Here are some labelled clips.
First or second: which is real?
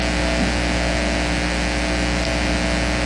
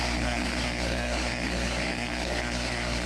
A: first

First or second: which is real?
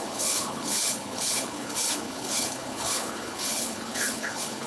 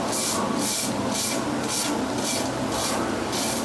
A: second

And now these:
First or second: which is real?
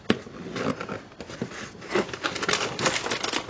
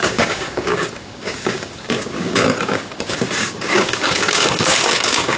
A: first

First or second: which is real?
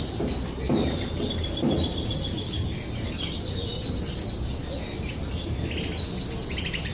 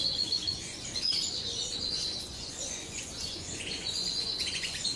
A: first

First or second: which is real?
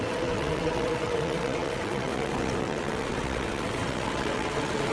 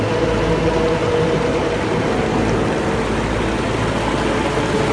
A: second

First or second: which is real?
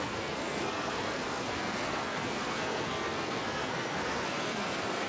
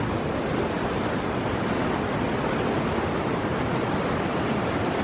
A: second